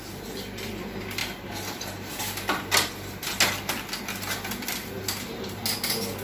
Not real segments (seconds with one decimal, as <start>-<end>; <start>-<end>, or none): none